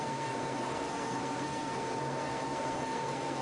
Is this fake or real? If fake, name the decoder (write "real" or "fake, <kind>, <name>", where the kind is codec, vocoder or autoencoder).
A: fake, codec, SNAC